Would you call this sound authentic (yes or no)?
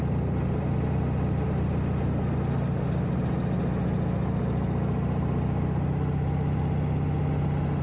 yes